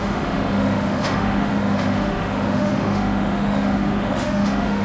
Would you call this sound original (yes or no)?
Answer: no